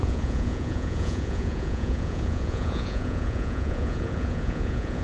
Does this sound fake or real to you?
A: fake